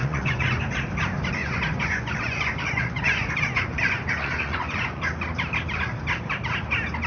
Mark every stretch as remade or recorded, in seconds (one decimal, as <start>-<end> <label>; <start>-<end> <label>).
0.0-0.6 remade; 0.6-1.4 recorded; 1.4-5.0 remade; 5.0-7.1 recorded

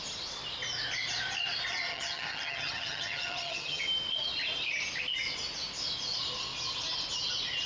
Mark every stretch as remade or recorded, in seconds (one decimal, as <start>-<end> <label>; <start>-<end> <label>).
0.0-1.9 recorded; 1.9-3.8 remade; 3.8-7.7 recorded